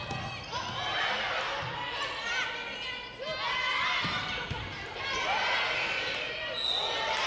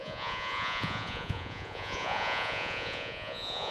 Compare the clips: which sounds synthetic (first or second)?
second